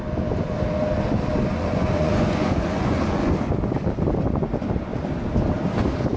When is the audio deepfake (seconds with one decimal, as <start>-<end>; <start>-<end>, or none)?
1.5-3.3